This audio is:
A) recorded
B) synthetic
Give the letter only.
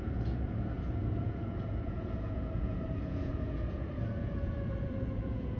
B